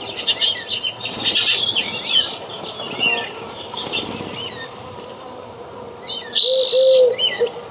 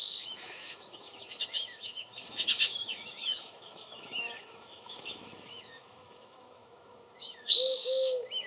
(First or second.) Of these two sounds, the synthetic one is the second